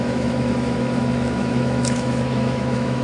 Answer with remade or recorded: remade